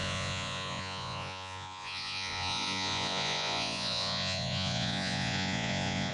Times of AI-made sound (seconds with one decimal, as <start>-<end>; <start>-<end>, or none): 0.0-6.1